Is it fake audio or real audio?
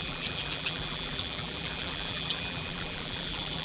fake